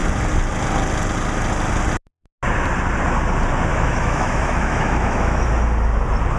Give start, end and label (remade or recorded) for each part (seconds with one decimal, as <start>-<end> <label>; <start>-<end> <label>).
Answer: 0.0-3.7 recorded; 3.7-5.5 remade; 5.5-6.4 recorded